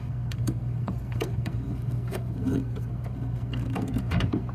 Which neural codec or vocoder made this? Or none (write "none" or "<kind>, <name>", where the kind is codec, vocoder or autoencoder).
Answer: codec, SNAC